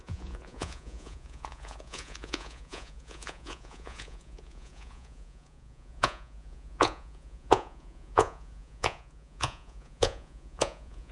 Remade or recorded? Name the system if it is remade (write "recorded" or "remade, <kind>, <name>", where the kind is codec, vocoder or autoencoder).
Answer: remade, vocoder, Vocos